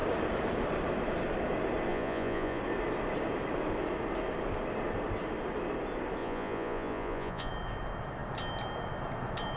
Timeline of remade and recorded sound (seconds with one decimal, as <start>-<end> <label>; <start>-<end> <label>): 0.0-1.9 recorded; 1.9-2.6 remade; 2.6-6.2 recorded; 6.2-7.5 remade; 7.5-9.6 recorded